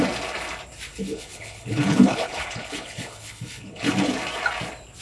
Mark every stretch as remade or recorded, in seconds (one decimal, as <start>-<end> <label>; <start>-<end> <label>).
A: 0.0-0.9 recorded; 0.9-3.9 remade; 3.9-5.0 recorded